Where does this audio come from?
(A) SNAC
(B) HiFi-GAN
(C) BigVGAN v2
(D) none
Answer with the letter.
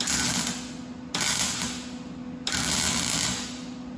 D